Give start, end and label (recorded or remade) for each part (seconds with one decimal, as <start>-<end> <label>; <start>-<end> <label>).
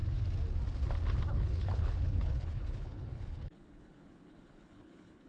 0.0-1.3 recorded; 1.3-5.3 remade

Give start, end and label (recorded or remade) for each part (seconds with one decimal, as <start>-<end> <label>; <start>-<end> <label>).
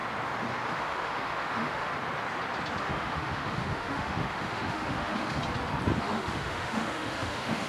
0.0-0.7 recorded; 0.7-1.9 remade; 1.9-2.8 recorded; 2.8-5.4 remade; 5.4-6.0 recorded; 6.0-7.7 remade